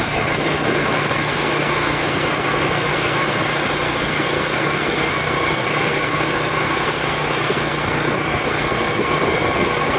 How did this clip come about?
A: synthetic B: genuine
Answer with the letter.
A